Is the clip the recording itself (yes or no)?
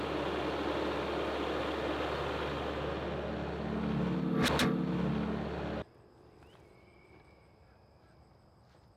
yes